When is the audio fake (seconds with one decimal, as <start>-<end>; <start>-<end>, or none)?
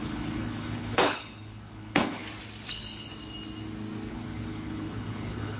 0.0-2.2; 2.7-3.1; 4.1-5.6